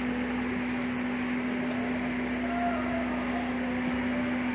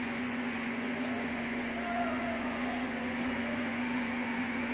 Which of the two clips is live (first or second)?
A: first